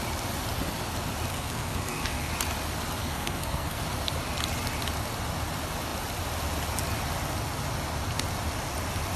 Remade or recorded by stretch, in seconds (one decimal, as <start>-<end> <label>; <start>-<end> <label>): 0.0-1.3 recorded; 1.3-2.3 remade; 2.3-3.0 recorded; 3.0-3.8 remade; 3.8-9.2 recorded